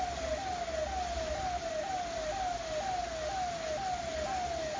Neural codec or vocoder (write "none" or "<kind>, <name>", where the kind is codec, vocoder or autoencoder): none